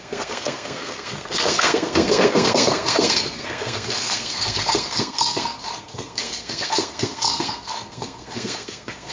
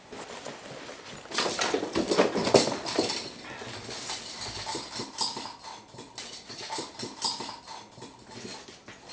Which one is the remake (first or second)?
first